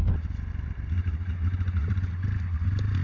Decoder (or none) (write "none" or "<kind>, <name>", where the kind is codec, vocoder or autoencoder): none